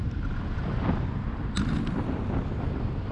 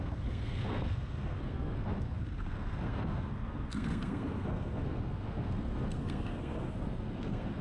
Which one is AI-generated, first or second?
second